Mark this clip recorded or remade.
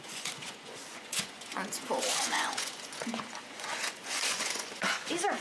remade